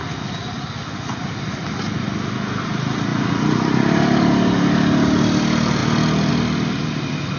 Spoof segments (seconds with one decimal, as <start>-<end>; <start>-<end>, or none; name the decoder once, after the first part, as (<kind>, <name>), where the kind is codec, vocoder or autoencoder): none